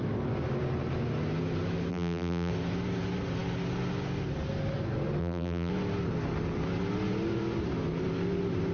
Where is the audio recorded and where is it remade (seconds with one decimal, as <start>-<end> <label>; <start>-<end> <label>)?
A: 0.0-1.9 recorded; 1.9-2.5 remade; 2.5-5.2 recorded; 5.2-5.7 remade; 5.7-8.7 recorded